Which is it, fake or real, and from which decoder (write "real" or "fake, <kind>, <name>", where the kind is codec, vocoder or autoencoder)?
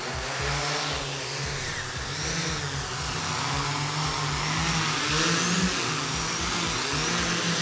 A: real